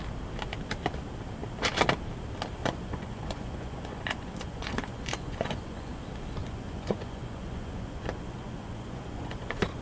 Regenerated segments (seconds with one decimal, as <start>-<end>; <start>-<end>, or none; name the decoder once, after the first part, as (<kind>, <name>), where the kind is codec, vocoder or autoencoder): 2.6-6.0 (vocoder, Vocos); 6.4-9.8

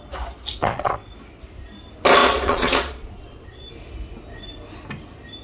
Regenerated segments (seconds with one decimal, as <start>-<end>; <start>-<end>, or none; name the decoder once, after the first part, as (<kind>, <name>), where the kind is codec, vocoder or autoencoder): 0.6-1.1 (vocoder, Vocos); 2.2-3.7